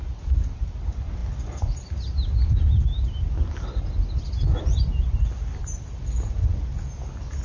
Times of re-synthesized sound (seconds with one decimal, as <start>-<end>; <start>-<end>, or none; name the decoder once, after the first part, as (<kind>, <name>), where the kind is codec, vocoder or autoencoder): none